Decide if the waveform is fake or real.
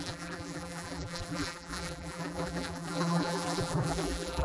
fake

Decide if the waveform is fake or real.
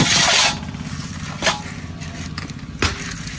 real